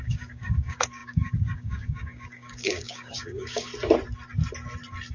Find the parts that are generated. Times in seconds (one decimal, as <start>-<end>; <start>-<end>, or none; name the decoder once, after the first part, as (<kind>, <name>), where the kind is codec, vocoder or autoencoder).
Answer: 0.0-3.7 (codec, DAC)